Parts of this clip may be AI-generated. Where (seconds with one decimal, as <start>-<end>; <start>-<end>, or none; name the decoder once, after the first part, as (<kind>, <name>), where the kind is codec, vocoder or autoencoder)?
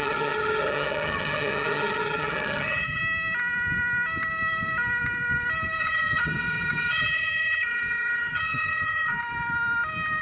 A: 0.0-3.0 (vocoder, HiFi-GAN); 5.8-9.2